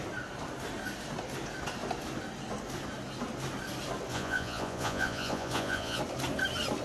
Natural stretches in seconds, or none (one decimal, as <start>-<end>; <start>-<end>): 0.0-4.1; 6.0-6.8